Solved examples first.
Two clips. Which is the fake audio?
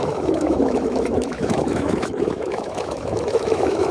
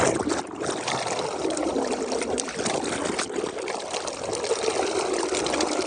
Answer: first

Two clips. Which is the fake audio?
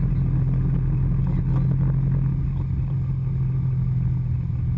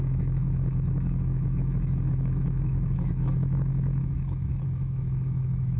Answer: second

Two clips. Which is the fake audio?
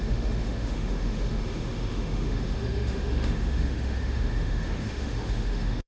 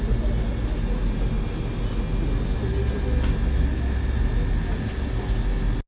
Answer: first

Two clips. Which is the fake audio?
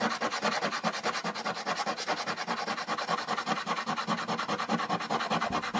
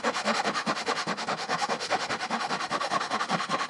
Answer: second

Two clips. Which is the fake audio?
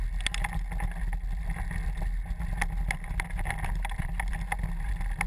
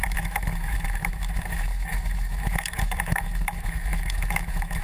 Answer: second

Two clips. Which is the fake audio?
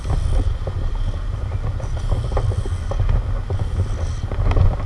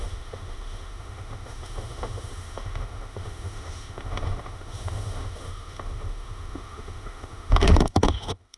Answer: second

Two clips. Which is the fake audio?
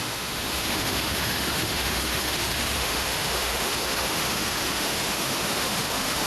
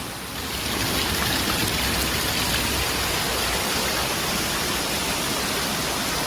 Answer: first